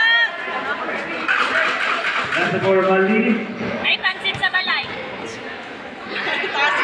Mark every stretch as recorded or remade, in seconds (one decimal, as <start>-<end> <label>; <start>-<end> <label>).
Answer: 0.0-3.4 recorded; 3.4-4.7 remade; 4.7-5.3 recorded; 5.3-6.1 remade; 6.1-6.8 recorded